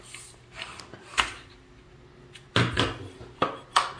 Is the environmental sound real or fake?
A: real